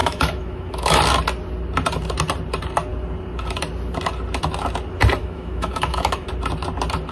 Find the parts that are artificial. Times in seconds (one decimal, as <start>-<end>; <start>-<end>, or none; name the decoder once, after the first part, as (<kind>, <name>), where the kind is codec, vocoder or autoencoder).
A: 0.0-1.0 (autoencoder, DAC-VAE); 5.2-6.3

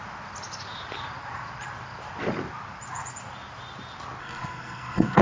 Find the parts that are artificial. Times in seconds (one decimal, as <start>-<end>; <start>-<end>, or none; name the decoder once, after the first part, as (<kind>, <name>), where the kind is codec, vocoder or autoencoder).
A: 4.2-5.2 (codec, SNAC)